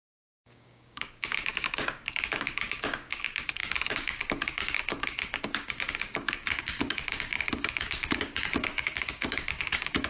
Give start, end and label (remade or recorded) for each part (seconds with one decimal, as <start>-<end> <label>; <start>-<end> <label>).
0.0-10.1 remade